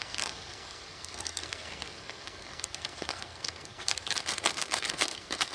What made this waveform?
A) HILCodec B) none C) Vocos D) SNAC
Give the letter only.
D